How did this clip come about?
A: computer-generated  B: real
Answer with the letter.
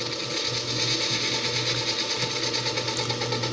B